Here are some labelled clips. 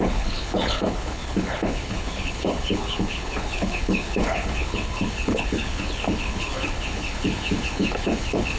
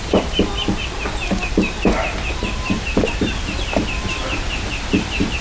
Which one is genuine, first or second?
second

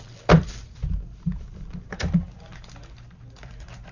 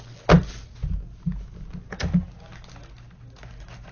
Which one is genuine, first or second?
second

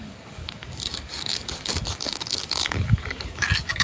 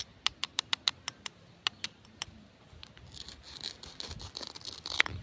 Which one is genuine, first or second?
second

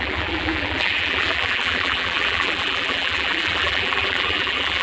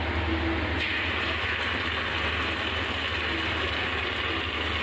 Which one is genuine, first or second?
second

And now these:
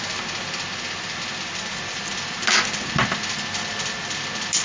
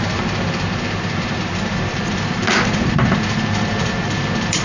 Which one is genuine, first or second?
first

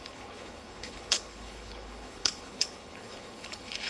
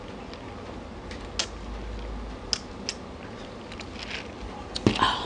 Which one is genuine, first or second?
second